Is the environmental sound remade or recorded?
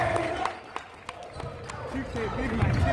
recorded